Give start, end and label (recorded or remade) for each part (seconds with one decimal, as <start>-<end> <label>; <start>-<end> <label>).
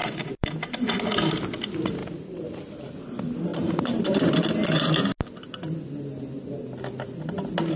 0.0-1.0 remade; 1.0-2.0 recorded; 2.0-2.9 remade; 2.9-3.5 recorded; 3.5-4.3 remade; 4.3-7.8 recorded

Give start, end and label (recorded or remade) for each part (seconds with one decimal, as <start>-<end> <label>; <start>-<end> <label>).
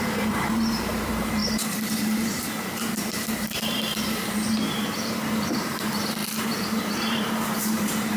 0.0-8.2 remade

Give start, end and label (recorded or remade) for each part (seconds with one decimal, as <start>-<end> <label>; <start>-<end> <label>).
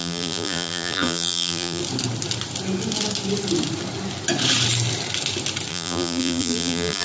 0.0-1.8 remade; 1.8-5.7 recorded; 5.7-7.0 remade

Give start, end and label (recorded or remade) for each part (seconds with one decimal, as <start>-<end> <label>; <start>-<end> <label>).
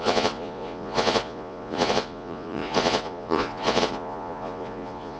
0.0-5.2 remade